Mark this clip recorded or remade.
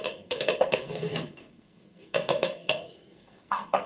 remade